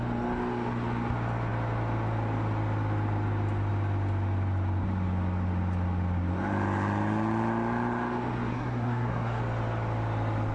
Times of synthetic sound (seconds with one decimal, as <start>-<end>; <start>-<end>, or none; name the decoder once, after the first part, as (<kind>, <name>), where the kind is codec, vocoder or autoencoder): 8.5-9.4 (codec, SNAC)